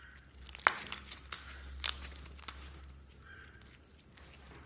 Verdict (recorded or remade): recorded